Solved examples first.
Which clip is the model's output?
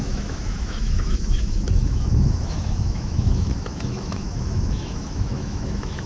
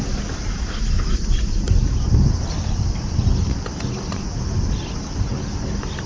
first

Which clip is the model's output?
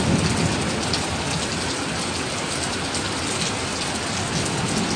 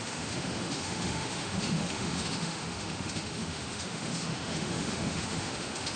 second